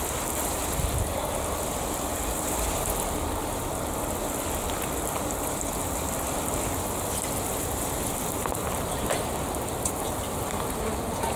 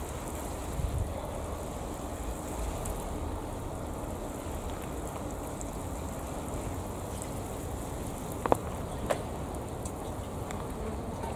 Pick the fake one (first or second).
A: first